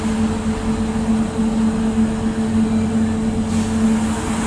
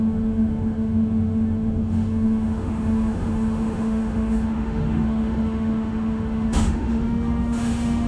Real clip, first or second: first